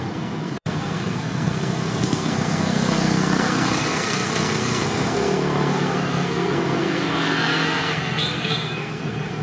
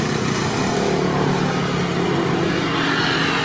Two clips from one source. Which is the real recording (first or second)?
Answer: second